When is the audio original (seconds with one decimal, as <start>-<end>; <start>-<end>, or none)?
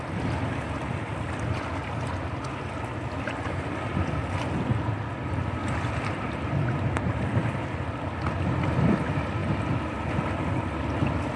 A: 0.0-5.6; 7.0-11.4